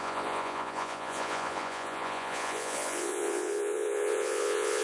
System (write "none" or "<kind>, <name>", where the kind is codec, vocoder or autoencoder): vocoder, Vocos